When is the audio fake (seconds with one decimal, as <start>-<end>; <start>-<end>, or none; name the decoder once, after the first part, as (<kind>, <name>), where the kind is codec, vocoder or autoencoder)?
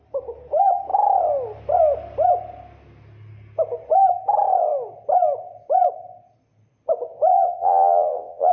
7.3-8.5 (vocoder, Vocos)